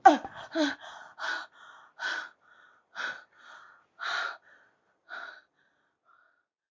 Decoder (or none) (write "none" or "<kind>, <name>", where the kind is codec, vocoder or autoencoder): none